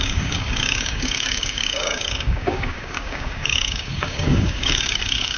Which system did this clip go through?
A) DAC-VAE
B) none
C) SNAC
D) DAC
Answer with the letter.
D